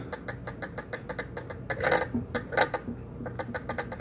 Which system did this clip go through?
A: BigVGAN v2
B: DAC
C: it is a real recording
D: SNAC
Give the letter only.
C